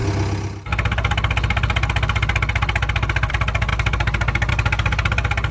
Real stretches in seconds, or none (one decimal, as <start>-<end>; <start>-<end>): 0.0-5.5